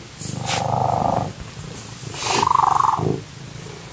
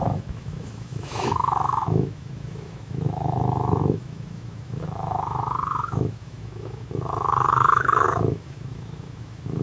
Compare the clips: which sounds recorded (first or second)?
first